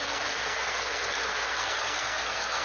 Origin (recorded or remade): remade